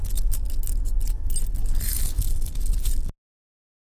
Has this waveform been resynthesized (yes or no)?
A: no